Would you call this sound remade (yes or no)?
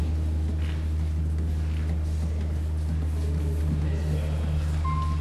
no